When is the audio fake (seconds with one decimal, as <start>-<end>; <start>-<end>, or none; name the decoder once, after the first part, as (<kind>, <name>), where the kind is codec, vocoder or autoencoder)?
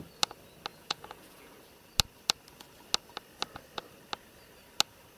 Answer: 0.7-1.5 (vocoder, Vocos)